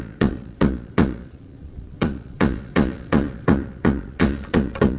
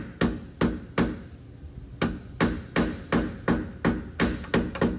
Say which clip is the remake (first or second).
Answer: first